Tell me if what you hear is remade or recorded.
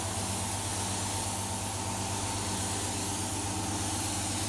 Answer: recorded